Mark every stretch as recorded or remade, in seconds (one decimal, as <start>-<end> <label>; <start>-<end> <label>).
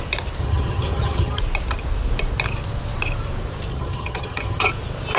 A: 0.0-0.4 recorded; 0.4-1.4 remade; 1.4-3.7 recorded; 3.7-4.7 remade; 4.7-5.2 recorded